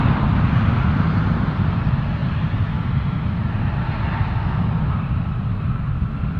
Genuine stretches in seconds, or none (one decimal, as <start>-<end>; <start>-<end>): 2.2-4.6